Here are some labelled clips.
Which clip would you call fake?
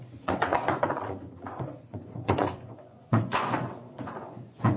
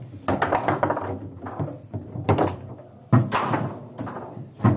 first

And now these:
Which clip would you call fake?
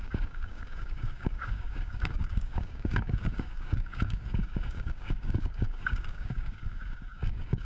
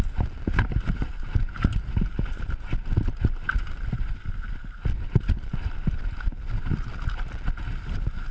first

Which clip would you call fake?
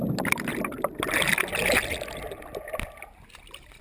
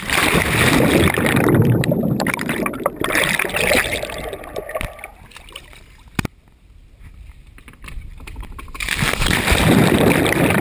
second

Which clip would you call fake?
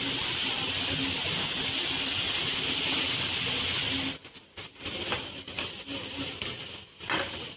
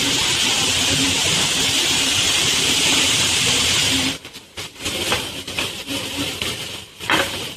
second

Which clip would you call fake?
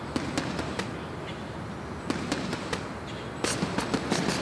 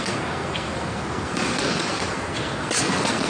second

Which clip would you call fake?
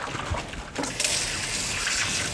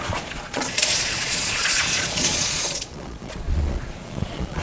second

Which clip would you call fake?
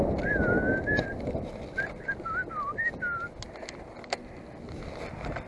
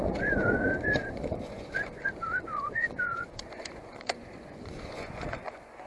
second